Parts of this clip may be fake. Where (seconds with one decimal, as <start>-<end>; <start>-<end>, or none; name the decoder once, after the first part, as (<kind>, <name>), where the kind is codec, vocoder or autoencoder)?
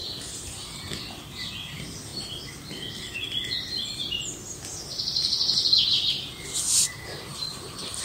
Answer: 0.0-0.6 (vocoder, BigVGAN v2); 7.3-8.0